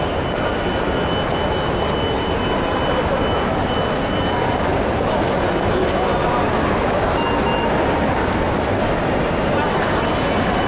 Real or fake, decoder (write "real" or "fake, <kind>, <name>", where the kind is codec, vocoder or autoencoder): real